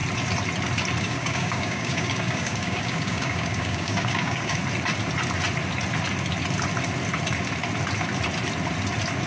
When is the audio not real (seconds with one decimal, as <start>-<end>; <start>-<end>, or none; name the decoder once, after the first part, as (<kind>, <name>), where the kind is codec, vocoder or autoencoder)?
1.0-4.6 (codec, DAC)